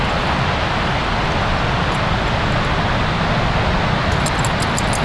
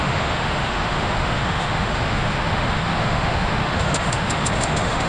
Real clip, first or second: first